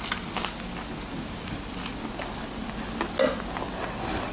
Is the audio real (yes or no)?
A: yes